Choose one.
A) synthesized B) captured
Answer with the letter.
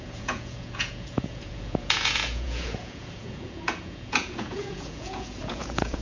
A